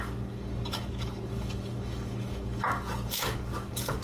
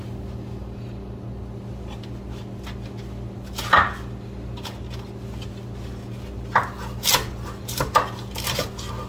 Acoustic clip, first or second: second